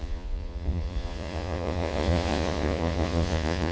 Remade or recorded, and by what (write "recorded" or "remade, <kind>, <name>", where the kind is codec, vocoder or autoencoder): remade, vocoder, Vocos